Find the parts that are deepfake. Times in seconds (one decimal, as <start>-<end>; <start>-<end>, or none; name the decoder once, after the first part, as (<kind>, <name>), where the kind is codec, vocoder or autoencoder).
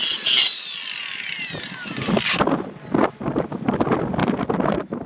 3.1-4.2 (vocoder, BigVGAN v2)